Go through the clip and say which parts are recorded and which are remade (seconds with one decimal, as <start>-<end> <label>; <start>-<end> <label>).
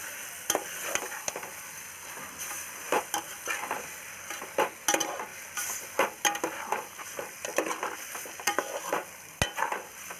0.0-10.2 recorded